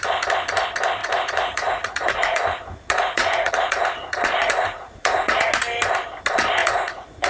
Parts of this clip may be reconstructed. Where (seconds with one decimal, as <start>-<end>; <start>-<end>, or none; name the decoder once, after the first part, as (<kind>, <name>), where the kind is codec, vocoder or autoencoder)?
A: 1.0-5.4 (vocoder, Vocos); 6.6-7.3